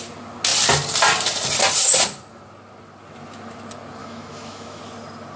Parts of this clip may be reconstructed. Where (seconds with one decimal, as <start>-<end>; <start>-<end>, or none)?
4.0-4.8